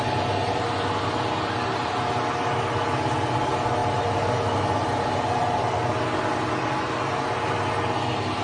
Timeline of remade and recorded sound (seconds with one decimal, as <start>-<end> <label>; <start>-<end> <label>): 0.0-8.4 recorded